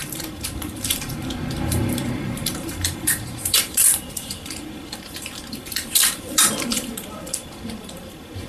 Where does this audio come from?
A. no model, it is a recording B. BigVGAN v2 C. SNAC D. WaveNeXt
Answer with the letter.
B